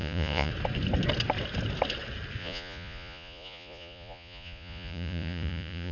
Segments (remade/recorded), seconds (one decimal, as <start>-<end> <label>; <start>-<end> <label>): 0.0-0.5 remade; 0.5-2.4 recorded; 2.4-5.9 remade